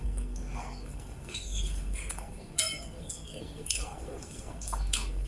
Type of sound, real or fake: fake